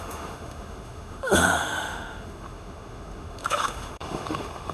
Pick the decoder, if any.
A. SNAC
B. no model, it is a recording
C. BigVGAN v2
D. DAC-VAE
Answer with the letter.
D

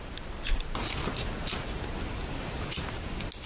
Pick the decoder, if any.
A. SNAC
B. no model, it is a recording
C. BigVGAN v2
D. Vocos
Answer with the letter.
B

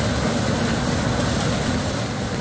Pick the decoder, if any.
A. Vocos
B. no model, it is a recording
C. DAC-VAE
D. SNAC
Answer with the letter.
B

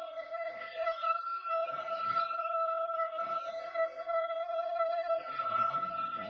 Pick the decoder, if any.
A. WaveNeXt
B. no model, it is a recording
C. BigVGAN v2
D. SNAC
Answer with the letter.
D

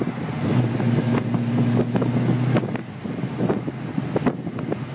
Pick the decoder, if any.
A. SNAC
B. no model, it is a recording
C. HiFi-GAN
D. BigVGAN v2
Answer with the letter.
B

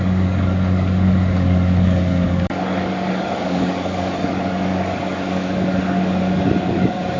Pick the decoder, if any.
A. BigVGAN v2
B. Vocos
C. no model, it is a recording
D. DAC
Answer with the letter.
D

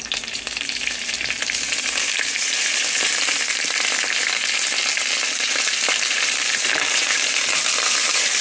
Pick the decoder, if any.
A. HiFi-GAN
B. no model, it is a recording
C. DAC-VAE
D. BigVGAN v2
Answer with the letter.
D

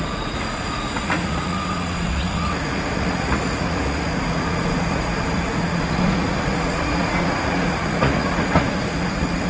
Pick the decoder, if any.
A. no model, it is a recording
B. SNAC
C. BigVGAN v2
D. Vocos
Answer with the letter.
D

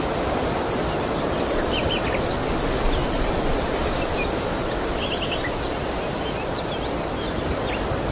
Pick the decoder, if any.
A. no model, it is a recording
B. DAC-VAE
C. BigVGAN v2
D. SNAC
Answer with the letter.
A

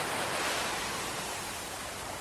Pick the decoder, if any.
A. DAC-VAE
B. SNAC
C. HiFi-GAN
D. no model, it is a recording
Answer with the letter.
D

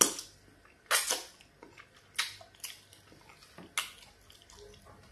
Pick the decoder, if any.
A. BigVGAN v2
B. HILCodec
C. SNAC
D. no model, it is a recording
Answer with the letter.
D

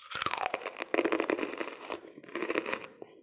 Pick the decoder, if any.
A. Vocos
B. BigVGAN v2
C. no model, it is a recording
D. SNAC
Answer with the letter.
B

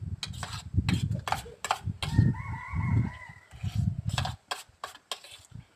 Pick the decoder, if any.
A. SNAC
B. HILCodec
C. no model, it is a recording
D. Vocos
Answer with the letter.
C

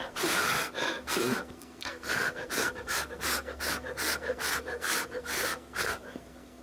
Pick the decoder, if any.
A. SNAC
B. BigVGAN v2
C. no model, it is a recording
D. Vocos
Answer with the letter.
A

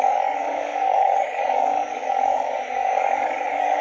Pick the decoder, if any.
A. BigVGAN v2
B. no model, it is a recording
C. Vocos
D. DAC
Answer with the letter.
D